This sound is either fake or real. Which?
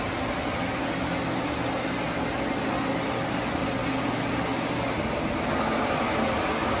real